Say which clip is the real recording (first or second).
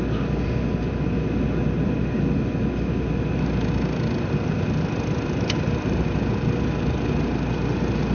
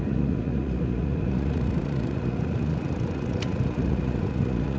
first